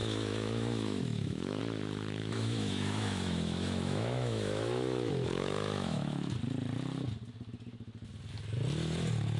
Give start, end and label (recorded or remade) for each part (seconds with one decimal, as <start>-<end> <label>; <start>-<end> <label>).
0.0-1.6 remade; 1.6-2.2 recorded; 2.2-6.3 remade; 6.3-9.4 recorded